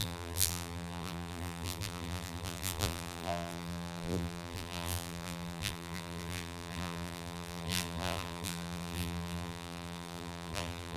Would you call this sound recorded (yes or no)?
no